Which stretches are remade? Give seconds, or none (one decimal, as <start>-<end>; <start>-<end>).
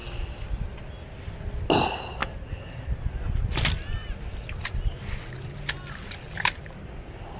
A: none